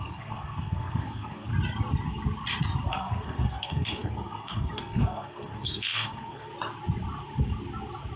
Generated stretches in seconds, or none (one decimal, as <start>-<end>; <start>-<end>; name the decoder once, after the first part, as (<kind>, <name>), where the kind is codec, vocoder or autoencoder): 0.0-1.5 (codec, SNAC); 2.9-6.5